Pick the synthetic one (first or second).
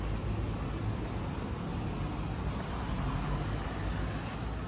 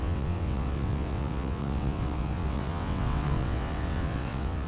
second